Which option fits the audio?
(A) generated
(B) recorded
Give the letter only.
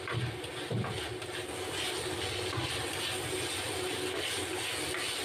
B